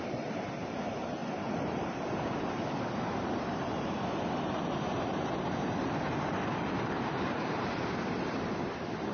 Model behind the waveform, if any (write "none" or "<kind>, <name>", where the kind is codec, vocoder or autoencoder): vocoder, BigVGAN v2